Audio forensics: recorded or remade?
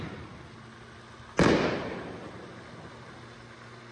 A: recorded